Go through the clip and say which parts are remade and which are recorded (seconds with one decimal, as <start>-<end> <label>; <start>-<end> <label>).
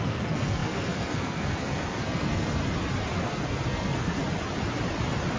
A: 0.0-2.6 remade; 2.6-3.2 recorded; 3.2-4.2 remade; 4.2-5.4 recorded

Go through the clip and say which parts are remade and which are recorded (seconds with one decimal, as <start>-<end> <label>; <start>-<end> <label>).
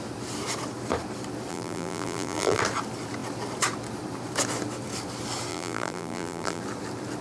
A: 0.0-1.5 recorded; 1.5-2.6 remade; 2.6-5.5 recorded; 5.5-6.6 remade; 6.6-7.2 recorded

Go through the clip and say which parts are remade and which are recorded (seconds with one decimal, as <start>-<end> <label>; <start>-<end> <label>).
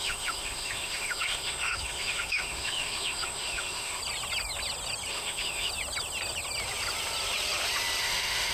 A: 0.0-4.0 remade; 4.0-5.1 recorded; 5.1-5.7 remade; 5.7-8.0 recorded; 8.0-8.5 remade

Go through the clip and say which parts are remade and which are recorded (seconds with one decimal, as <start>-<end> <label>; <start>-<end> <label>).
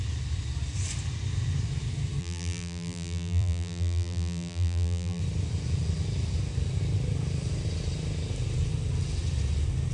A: 0.0-2.2 recorded; 2.2-5.2 remade; 5.2-9.9 recorded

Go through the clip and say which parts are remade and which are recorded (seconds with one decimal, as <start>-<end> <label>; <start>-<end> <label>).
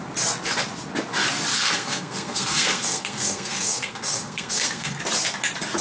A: 0.0-1.5 recorded; 1.5-5.0 remade; 5.0-5.8 recorded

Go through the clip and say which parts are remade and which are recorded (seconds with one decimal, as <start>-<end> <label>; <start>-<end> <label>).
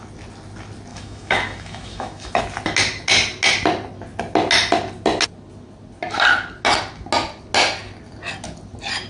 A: 0.0-0.9 recorded; 0.9-2.4 remade; 2.4-9.1 recorded